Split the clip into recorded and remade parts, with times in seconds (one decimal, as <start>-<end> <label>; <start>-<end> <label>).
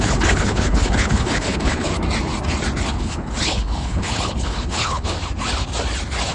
0.0-1.9 remade; 1.9-2.9 recorded; 2.9-5.2 remade; 5.2-6.3 recorded